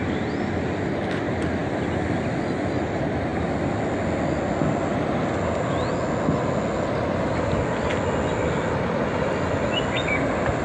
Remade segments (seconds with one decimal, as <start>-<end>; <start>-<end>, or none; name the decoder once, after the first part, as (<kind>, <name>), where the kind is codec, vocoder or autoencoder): none